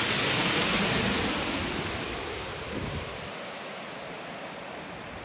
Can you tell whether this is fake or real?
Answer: real